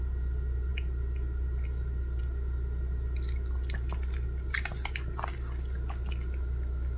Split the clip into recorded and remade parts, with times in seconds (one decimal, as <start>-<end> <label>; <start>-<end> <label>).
0.0-7.0 recorded